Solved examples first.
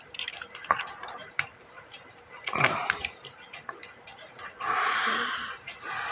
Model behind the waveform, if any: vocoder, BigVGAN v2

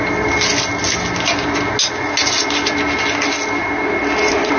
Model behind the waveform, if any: none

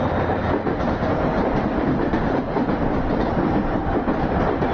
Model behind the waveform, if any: none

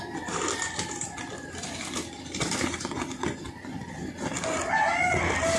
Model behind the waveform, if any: none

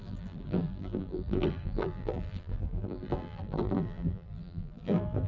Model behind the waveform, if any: vocoder, BigVGAN v2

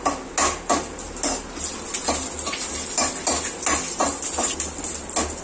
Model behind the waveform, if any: none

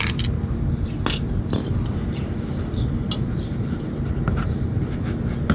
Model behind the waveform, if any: none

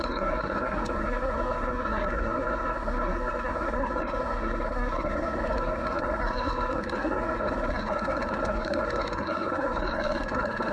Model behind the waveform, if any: codec, SNAC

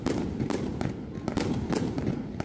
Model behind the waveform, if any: none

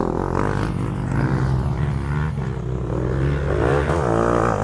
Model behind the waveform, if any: none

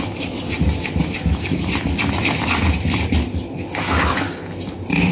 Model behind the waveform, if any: none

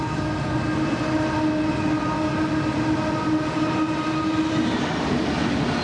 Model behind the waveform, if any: none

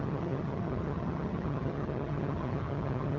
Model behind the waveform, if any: vocoder, HiFi-GAN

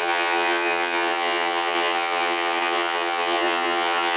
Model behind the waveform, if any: vocoder, HiFi-GAN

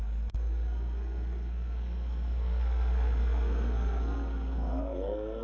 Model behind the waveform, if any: codec, SNAC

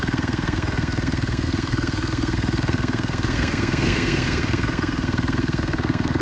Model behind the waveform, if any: codec, SNAC